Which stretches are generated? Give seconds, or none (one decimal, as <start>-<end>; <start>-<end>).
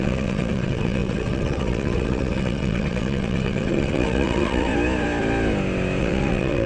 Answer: 0.0-4.7; 6.0-6.7